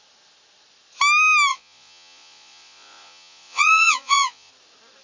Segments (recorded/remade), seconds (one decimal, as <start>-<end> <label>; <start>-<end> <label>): 0.0-1.5 recorded; 1.5-4.5 remade; 4.5-5.0 recorded